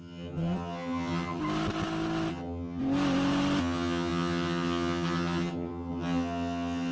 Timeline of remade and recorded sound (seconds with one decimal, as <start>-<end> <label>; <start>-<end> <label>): 0.0-1.4 remade; 1.4-2.3 recorded; 2.3-2.8 remade; 2.8-3.6 recorded; 3.6-6.9 remade